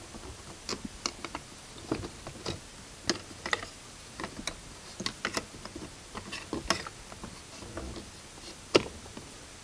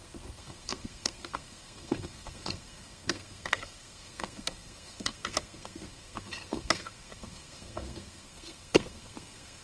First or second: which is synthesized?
second